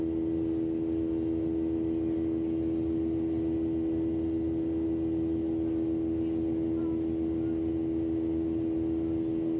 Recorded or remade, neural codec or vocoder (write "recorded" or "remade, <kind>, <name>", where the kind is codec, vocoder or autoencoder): recorded